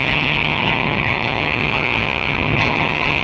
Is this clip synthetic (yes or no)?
yes